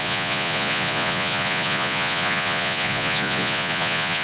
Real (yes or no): no